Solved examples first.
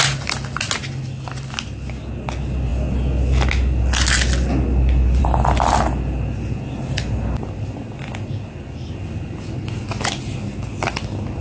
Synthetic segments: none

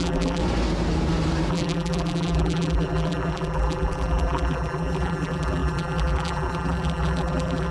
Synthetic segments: 0.0-0.4 (vocoder, BigVGAN v2); 1.5-7.7